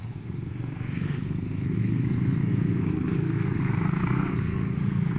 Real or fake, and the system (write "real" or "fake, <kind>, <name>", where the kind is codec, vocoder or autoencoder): fake, codec, SNAC